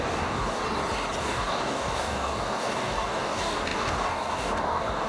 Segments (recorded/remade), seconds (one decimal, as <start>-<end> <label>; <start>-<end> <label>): 0.0-0.6 remade; 0.6-1.2 recorded; 1.2-5.1 remade

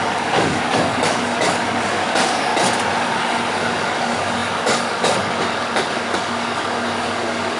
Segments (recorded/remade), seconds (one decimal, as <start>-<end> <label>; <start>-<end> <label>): 0.0-2.5 remade; 2.5-3.0 recorded; 3.0-7.6 remade

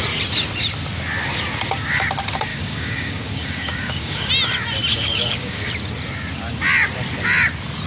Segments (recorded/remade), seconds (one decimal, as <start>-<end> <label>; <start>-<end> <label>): 0.0-2.5 recorded; 2.5-4.3 remade; 4.3-4.9 recorded; 4.9-5.7 remade; 5.7-7.9 recorded

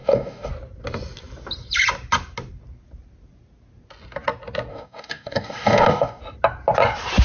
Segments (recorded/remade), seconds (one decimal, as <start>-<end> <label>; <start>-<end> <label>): 0.0-0.5 remade; 0.5-4.7 recorded; 4.7-6.2 remade; 6.2-7.2 recorded

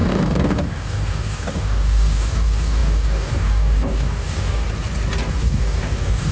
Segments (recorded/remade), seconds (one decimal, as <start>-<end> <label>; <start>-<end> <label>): 0.0-4.6 remade; 4.6-5.3 recorded; 5.3-6.3 remade

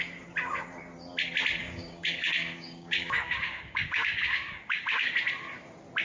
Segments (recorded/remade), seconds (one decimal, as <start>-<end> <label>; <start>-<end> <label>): 0.0-1.6 recorded; 1.6-5.1 remade; 5.1-6.0 recorded

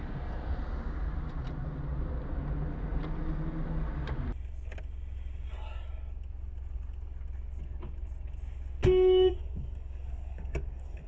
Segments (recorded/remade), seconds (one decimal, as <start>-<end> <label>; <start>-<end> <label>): 0.0-8.8 recorded; 8.8-11.1 remade

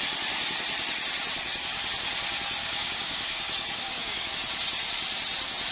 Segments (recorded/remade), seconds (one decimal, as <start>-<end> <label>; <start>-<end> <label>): 0.0-2.6 recorded; 2.6-4.3 remade; 4.3-5.7 recorded